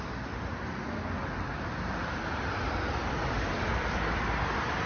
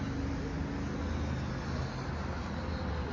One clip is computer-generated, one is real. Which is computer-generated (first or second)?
first